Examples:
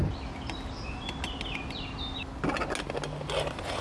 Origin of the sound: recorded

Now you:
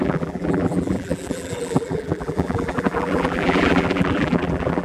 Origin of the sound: remade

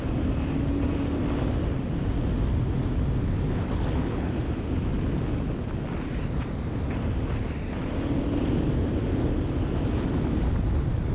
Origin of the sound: recorded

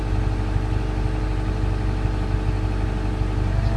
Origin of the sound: recorded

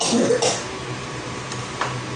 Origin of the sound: recorded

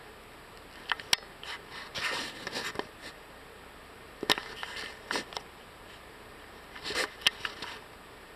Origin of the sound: recorded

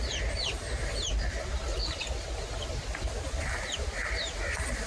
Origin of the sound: remade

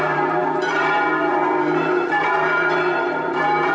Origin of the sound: remade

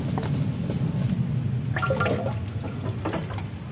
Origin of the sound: recorded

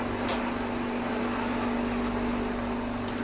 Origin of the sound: recorded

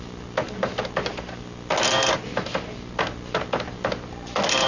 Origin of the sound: recorded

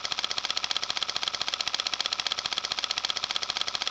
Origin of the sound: recorded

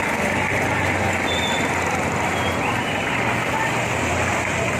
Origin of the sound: recorded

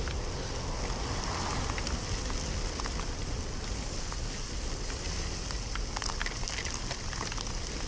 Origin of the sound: recorded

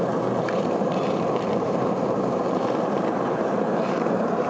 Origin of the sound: remade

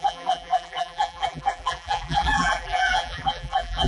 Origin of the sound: remade